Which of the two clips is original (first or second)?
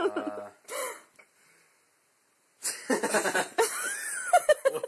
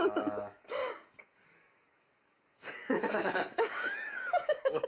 first